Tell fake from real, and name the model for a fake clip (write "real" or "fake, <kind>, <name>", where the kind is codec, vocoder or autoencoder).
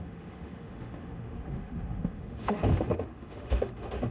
fake, autoencoder, DAC-VAE